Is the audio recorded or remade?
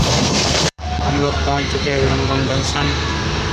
remade